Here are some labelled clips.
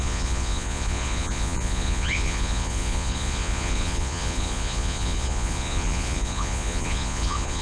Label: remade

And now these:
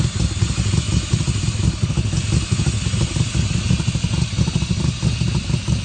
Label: recorded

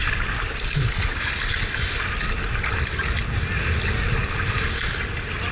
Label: recorded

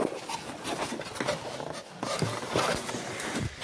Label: recorded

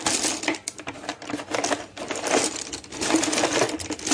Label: recorded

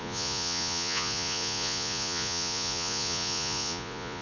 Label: remade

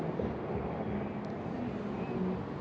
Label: recorded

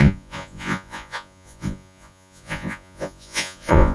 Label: remade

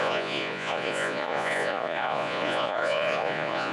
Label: remade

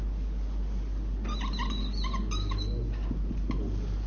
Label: recorded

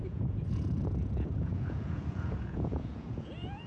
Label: remade